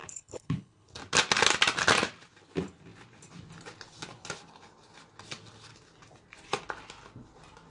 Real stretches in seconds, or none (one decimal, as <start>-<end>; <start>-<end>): 0.9-7.7